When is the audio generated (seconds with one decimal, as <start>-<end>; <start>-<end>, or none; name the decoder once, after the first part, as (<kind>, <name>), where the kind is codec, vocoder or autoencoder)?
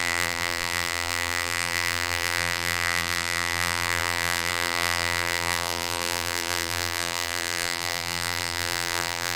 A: 0.0-9.4 (vocoder, BigVGAN v2)